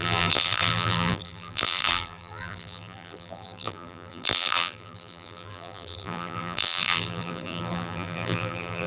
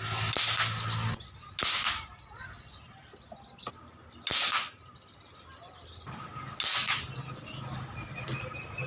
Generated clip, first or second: first